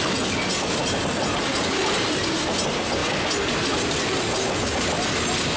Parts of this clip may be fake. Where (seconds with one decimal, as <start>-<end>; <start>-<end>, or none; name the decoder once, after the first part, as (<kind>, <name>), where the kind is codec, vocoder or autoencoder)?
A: none